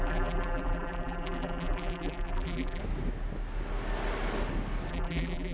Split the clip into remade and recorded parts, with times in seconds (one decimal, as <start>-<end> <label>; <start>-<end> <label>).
0.0-2.8 remade; 2.8-4.9 recorded; 4.9-5.5 remade